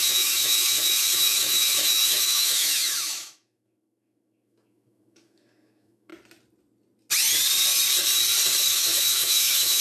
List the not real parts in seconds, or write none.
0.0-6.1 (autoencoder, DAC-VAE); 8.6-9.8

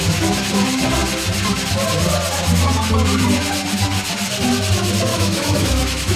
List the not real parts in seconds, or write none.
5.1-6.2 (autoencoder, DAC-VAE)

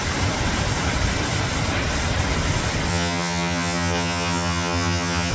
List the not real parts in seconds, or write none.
2.9-5.3 (vocoder, HiFi-GAN)

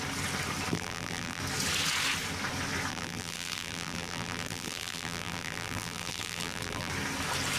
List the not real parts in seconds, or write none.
0.7-1.4 (vocoder, BigVGAN v2); 2.9-6.9

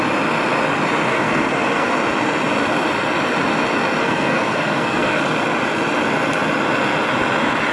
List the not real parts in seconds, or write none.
1.1-1.9 (codec, SNAC); 4.0-5.2

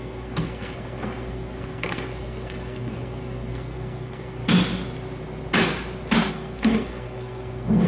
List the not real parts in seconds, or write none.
0.0-4.4 (codec, SNAC); 6.3-7.9

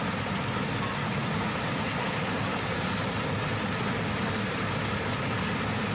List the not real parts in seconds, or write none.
none

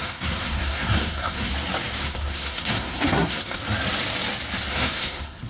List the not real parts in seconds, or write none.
0.0-1.5 (codec, SNAC); 2.0-3.6; 4.7-5.5